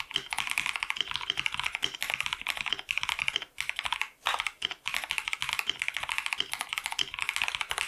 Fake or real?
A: real